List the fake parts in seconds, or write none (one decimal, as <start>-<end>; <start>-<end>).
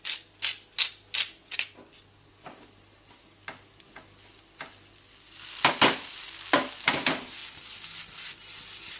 none